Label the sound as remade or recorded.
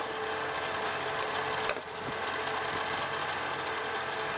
recorded